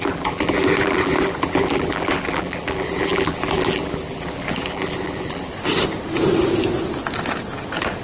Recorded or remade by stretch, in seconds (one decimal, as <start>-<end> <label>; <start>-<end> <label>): 0.0-5.5 remade; 5.5-8.0 recorded